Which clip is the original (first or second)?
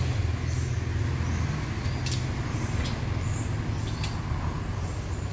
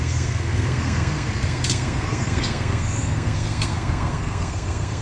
first